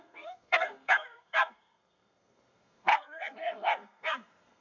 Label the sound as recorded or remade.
remade